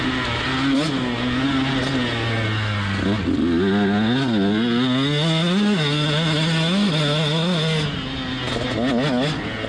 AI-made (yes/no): no